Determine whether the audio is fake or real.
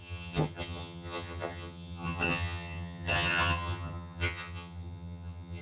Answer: fake